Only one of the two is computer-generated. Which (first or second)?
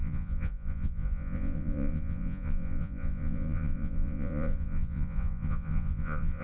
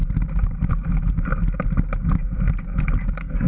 first